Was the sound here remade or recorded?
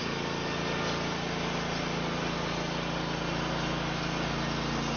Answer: recorded